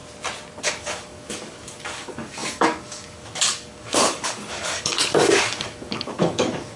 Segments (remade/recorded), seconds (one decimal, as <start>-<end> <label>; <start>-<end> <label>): 0.0-0.6 recorded; 0.6-6.8 remade